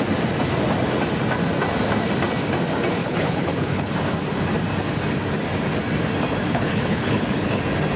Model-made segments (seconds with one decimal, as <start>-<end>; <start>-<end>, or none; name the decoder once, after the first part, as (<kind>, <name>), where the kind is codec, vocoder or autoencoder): 3.0-3.9 (codec, HILCodec); 6.5-7.6